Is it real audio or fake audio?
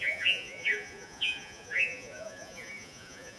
fake